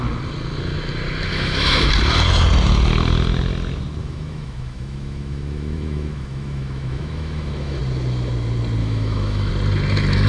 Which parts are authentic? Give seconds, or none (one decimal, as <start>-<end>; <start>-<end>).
0.0-1.3; 1.9-4.0; 7.8-8.8; 9.5-10.3

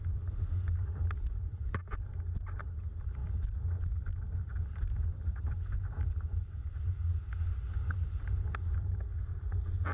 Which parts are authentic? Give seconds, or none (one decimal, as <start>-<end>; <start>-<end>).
0.0-9.9

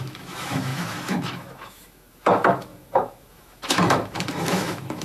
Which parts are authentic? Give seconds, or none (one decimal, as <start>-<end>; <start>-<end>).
none

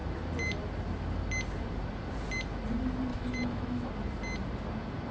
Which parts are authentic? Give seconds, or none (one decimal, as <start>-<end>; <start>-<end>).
0.0-3.1; 3.9-5.1

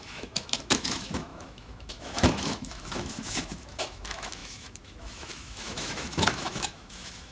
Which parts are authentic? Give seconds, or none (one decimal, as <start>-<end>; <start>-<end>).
none